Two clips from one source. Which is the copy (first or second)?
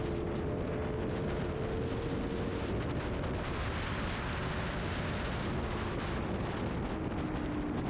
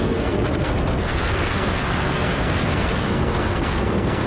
second